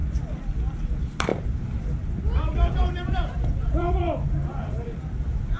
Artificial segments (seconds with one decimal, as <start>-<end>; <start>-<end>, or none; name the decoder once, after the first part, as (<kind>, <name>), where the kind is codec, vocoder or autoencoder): 0.8-5.6 (vocoder, BigVGAN v2)